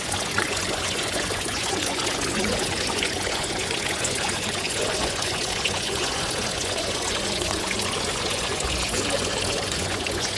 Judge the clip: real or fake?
fake